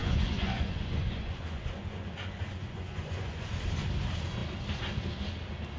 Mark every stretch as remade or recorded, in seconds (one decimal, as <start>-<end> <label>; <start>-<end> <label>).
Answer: 0.0-3.5 remade; 3.5-5.8 recorded